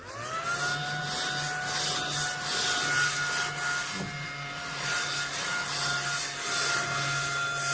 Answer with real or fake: real